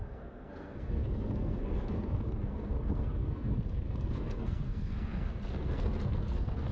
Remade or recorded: remade